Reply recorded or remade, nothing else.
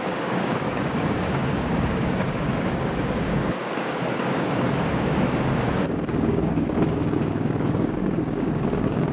remade